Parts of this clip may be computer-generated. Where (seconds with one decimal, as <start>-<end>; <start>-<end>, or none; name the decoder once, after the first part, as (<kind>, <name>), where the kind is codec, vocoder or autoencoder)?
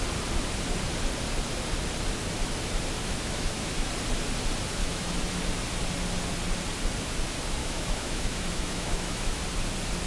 3.0-3.9 (autoencoder, DAC-VAE); 4.8-5.4; 7.6-9.4